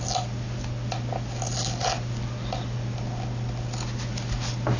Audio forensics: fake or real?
real